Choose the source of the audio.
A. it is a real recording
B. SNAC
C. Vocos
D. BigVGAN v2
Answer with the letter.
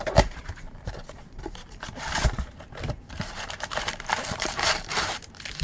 D